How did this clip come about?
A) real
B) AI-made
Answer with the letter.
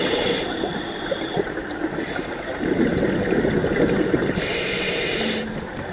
A